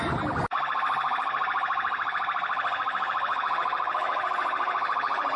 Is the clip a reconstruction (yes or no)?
no